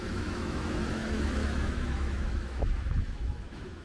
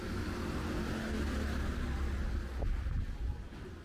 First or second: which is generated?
first